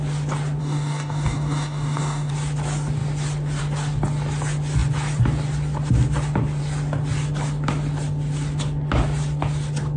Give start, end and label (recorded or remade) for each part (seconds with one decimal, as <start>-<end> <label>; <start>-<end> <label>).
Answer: 0.0-0.6 recorded; 0.6-2.3 remade; 2.3-10.0 recorded